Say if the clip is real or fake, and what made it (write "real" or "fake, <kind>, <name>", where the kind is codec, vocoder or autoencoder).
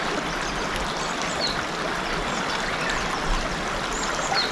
real